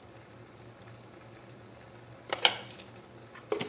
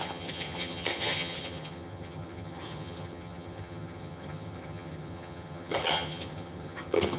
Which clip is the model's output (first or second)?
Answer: second